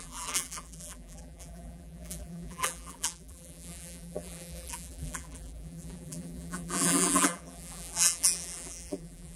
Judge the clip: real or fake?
fake